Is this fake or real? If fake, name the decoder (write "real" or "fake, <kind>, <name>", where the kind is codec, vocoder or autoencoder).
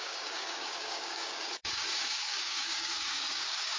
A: fake, codec, DAC